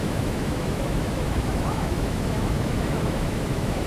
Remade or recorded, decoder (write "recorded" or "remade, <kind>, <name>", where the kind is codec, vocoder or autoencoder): remade, autoencoder, DAC-VAE